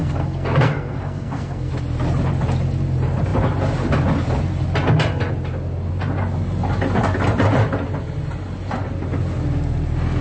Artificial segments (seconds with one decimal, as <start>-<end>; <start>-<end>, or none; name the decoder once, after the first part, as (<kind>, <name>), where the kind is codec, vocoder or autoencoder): 0.0-1.7 (codec, SNAC)